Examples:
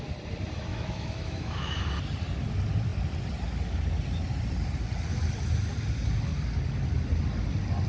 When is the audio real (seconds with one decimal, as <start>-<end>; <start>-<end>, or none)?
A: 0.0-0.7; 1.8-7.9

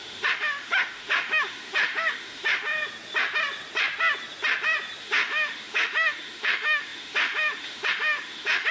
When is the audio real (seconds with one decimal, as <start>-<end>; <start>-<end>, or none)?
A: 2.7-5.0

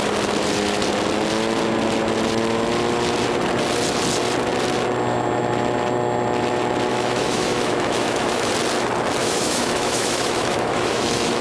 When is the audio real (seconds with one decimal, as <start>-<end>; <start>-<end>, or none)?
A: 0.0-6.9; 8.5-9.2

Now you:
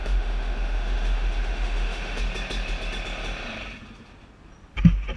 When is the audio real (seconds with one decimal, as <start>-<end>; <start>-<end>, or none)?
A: 2.2-5.2

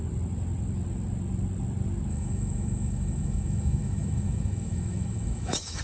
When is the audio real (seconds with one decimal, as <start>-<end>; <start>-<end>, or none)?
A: 0.0-2.1

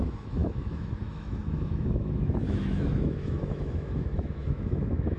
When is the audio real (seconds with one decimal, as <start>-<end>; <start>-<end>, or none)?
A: none